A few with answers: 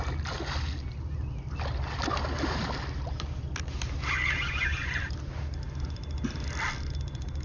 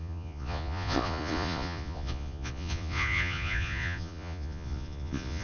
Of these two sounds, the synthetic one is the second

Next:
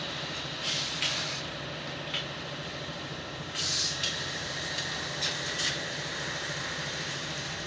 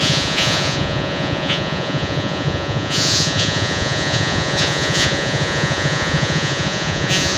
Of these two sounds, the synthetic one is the second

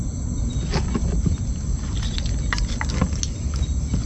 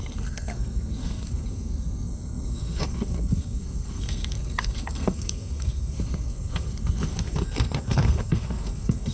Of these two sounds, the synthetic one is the second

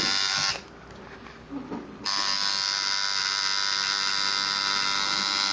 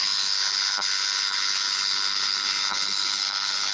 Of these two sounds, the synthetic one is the second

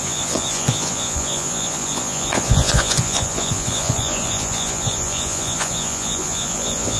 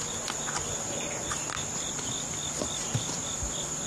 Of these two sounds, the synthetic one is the first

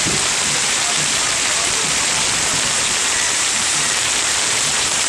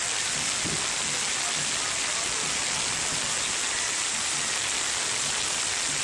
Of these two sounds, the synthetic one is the first